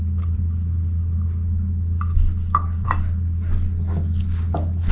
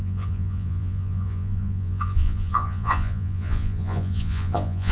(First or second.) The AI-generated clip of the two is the second